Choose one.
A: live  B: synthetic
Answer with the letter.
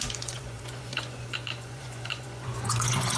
B